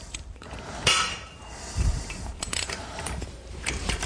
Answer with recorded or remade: remade